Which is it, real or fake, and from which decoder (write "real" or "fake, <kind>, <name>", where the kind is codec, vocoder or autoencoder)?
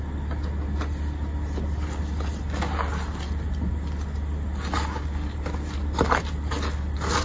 real